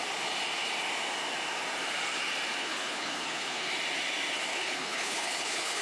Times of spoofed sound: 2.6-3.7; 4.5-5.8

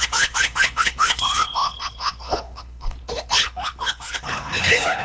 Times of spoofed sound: 0.0-5.0

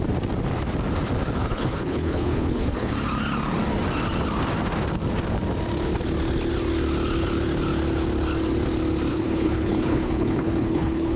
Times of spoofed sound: 1.4-2.9; 9.1-11.2

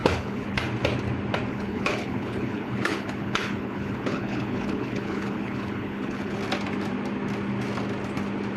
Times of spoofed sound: 0.0-0.6; 1.5-6.4

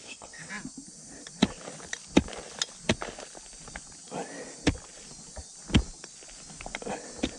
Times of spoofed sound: 0.0-0.5